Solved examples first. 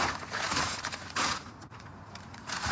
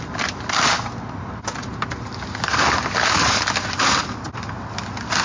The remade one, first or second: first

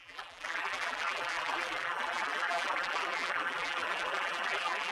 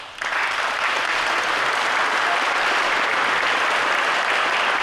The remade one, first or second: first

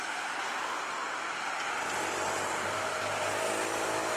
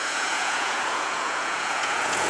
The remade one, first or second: second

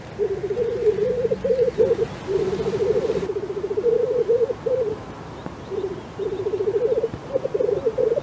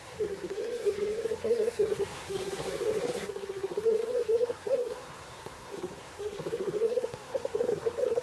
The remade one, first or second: second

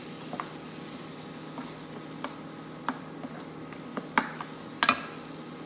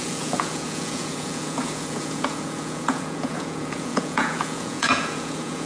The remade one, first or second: second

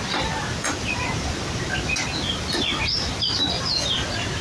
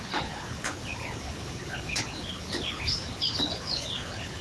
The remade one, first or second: second